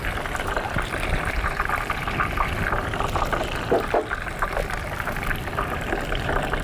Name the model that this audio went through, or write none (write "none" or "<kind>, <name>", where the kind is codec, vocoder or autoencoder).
none